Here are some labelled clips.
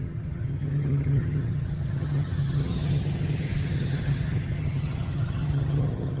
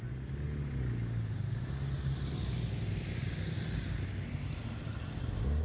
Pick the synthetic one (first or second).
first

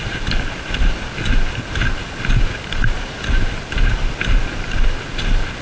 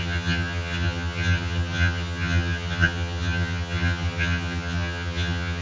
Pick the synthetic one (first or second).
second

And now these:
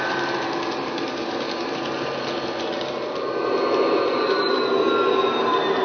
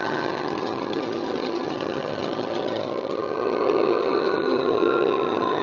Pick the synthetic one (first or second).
second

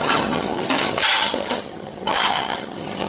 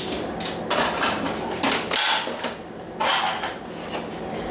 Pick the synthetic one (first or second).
first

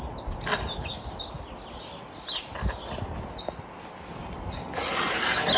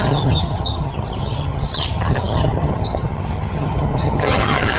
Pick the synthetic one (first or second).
second